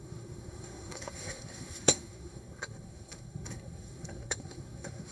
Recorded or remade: remade